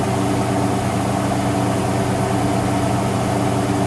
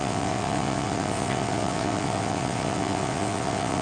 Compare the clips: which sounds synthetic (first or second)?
second